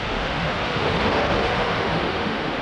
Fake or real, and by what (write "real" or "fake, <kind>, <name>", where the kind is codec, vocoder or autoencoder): fake, autoencoder, DAC-VAE